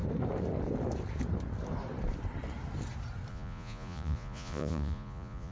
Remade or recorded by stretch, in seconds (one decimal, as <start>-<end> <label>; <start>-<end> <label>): 0.0-3.3 recorded; 3.3-5.5 remade

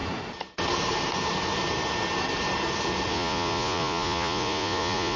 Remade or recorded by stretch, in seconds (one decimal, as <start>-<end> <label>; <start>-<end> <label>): 0.0-3.1 recorded; 3.1-5.2 remade

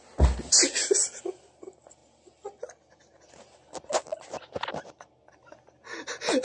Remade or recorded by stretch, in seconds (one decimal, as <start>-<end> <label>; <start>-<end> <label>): 0.0-6.4 recorded